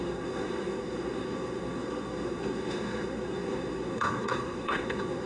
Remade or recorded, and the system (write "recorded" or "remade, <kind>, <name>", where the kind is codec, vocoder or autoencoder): remade, codec, SNAC